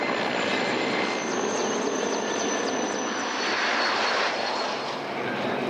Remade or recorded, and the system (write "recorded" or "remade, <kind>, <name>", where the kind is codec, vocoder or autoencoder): recorded